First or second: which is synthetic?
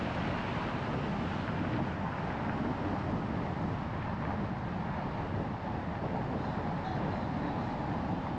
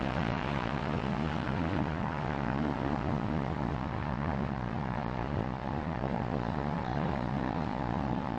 second